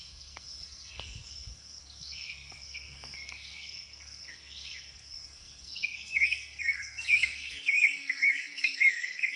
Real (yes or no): no